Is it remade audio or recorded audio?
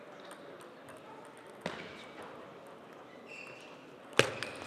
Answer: recorded